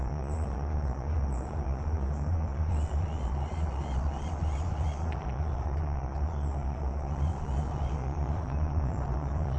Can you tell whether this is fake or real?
fake